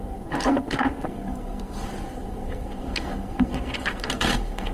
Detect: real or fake fake